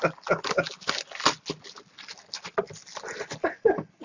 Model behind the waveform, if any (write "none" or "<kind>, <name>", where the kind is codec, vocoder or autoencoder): none